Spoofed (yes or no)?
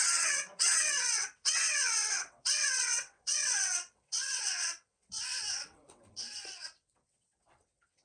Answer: yes